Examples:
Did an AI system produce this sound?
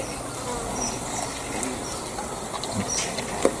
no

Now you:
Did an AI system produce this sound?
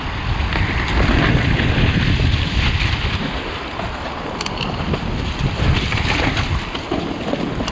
yes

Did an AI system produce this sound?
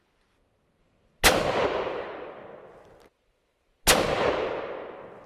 no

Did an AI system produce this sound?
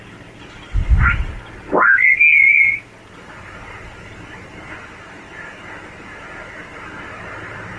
no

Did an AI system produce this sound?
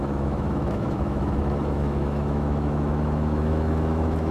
yes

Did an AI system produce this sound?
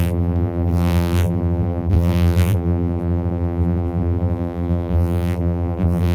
yes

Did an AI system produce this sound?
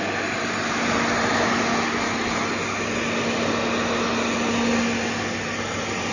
no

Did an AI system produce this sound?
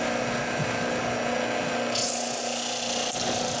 no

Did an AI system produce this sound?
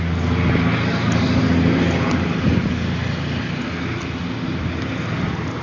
no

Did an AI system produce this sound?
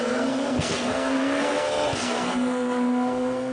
yes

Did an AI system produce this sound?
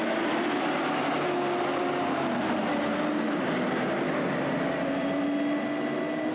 no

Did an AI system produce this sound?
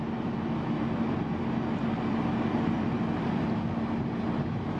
no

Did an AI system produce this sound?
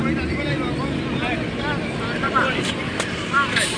no